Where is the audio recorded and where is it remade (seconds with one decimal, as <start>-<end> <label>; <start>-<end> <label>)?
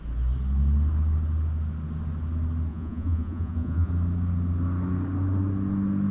0.0-2.7 recorded; 2.7-3.9 remade; 3.9-6.1 recorded